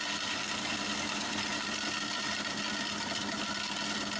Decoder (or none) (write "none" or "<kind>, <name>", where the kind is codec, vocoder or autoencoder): none